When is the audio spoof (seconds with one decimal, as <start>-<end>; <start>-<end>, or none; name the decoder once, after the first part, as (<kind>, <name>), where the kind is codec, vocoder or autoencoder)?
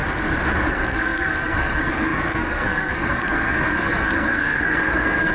0.7-5.3 (codec, SNAC)